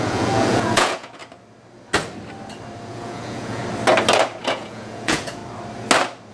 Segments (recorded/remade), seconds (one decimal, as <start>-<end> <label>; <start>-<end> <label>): 0.0-1.2 remade; 1.2-2.9 recorded; 2.9-3.6 remade; 3.6-4.4 recorded; 4.4-5.4 remade; 5.4-6.3 recorded